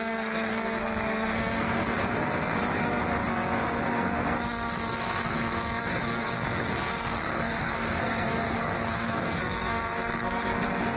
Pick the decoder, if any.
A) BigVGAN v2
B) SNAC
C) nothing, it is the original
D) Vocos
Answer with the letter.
B